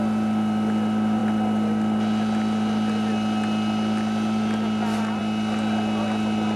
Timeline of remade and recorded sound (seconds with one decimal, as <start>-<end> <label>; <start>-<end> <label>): 0.0-6.6 recorded

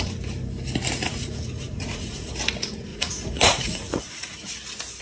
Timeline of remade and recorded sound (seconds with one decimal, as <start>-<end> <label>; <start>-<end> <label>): 0.0-1.2 recorded; 1.2-2.3 remade; 2.3-2.9 recorded; 2.9-4.5 remade; 4.5-5.0 recorded